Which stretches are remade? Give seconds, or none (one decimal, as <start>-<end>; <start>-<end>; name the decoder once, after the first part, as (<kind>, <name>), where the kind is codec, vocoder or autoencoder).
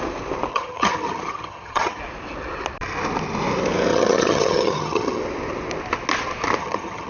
0.5-2.0 (vocoder, HiFi-GAN); 3.9-5.2; 6.6-7.1